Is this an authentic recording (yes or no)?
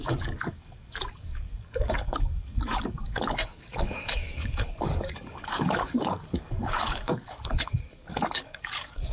no